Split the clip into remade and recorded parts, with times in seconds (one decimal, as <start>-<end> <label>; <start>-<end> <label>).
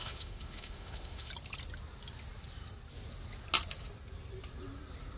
0.0-1.3 remade; 1.3-5.2 recorded